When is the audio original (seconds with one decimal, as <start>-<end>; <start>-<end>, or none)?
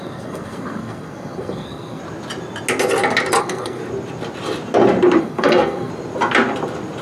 2.0-3.4; 3.8-5.2; 5.9-7.0